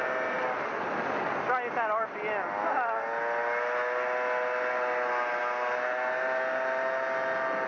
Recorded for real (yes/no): yes